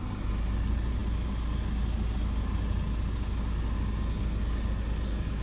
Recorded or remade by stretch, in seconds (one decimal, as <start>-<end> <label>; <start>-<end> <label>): 0.0-5.4 recorded